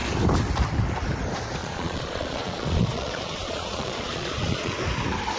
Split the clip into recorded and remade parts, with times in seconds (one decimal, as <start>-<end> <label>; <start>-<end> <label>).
0.0-1.6 recorded; 1.6-4.8 remade; 4.8-5.4 recorded